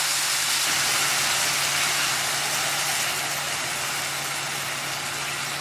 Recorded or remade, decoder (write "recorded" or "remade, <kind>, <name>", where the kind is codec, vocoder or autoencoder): recorded